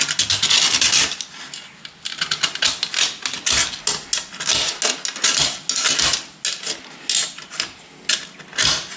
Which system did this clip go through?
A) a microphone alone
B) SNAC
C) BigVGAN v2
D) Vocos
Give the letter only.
A